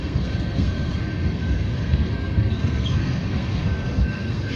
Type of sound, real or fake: fake